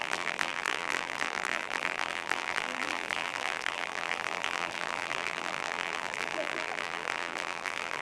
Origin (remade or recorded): remade